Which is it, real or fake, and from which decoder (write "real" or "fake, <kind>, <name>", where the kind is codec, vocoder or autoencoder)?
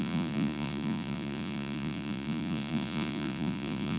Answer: fake, vocoder, Vocos